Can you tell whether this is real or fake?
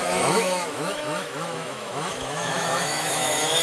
fake